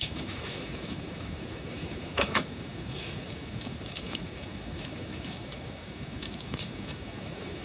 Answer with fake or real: fake